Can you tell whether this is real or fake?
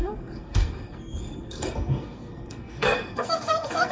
fake